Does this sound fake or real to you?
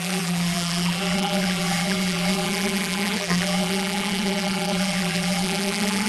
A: fake